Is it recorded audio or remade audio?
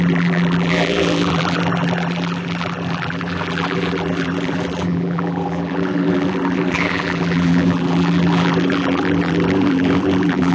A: remade